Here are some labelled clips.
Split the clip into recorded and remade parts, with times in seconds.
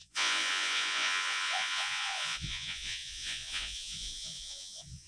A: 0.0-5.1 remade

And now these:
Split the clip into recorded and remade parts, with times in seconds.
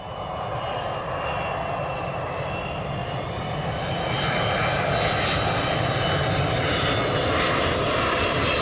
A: 0.0-8.6 recorded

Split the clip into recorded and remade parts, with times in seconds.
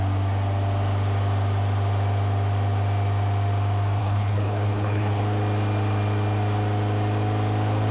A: 0.0-4.0 recorded; 4.0-5.2 remade; 5.2-7.9 recorded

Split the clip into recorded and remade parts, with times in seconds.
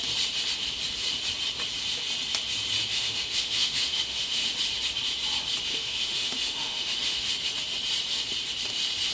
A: 0.0-2.8 recorded; 2.8-4.5 remade; 4.5-5.7 recorded; 5.7-7.3 remade; 7.3-9.1 recorded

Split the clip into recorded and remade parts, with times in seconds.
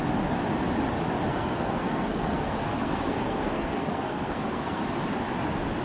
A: 0.0-1.3 recorded; 1.3-4.8 remade; 4.8-5.8 recorded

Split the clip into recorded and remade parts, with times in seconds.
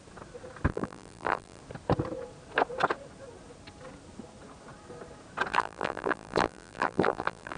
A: 0.0-0.7 recorded; 0.7-1.6 remade; 1.6-5.5 recorded; 5.5-7.6 remade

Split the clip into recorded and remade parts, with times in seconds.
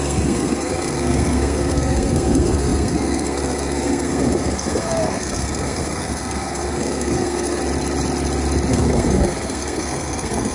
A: 0.0-7.6 remade; 7.6-8.7 recorded; 8.7-10.5 remade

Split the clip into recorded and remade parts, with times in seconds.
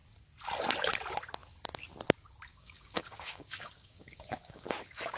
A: 0.0-2.5 recorded; 2.5-5.2 remade